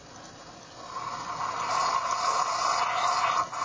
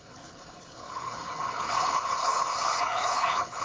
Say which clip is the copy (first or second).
second